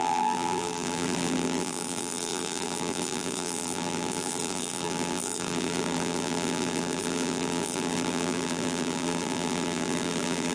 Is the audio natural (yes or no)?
no